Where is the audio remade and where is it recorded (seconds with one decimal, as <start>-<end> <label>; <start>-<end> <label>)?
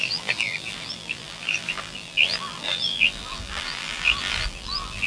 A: 0.0-5.1 remade